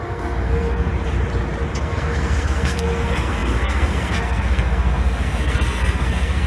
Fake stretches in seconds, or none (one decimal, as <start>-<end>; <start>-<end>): 0.0-0.9; 1.8-6.5